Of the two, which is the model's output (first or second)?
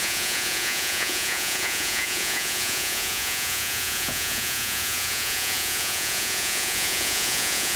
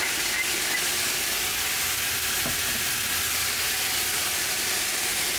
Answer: first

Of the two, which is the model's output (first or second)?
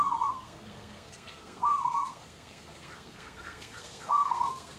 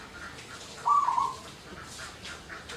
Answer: first